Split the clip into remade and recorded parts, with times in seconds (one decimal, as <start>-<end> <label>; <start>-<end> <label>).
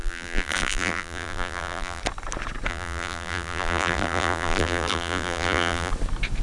0.0-2.0 remade; 2.0-2.7 recorded; 2.7-5.9 remade; 5.9-6.4 recorded